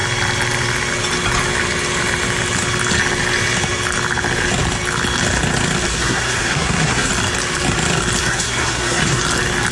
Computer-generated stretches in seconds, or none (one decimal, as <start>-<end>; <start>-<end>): 5.9-7.1; 8.2-9.2